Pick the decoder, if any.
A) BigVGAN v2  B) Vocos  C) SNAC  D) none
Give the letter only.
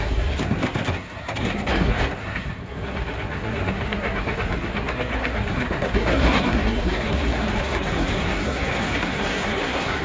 C